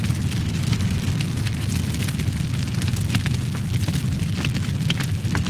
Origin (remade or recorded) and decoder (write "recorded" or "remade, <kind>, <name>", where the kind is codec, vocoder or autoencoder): recorded